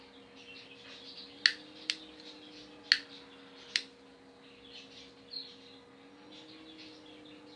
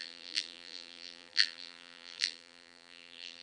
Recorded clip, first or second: first